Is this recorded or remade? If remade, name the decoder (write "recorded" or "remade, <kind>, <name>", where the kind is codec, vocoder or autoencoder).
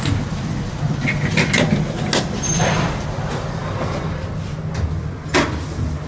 recorded